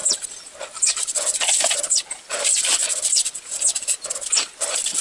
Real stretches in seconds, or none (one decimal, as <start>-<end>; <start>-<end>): 0.0-5.0